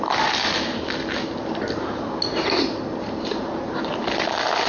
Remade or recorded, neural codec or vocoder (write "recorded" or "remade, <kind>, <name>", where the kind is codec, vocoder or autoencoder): recorded